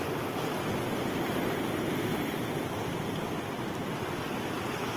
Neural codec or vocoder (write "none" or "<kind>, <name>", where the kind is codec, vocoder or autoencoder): none